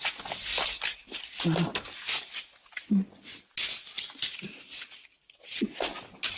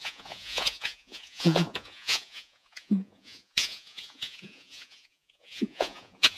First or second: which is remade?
second